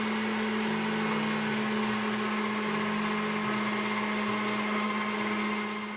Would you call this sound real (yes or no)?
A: yes